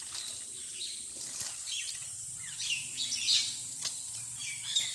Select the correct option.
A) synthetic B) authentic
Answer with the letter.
A